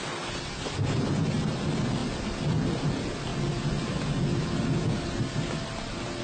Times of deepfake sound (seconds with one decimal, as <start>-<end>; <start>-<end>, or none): none